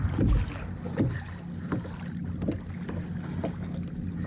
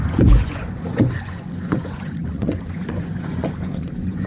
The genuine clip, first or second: first